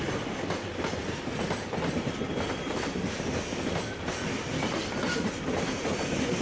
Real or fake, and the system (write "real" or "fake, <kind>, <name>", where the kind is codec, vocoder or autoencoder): real